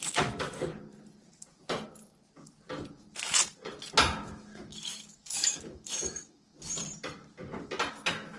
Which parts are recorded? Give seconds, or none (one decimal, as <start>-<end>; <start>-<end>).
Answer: 0.7-4.2; 6.5-7.9